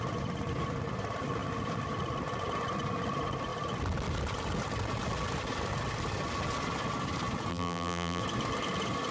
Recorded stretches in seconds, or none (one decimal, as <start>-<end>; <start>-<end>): 0.0-7.5; 8.2-9.1